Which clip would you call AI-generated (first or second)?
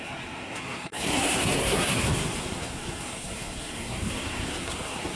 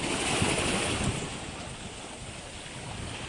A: first